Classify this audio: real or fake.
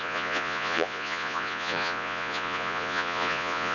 fake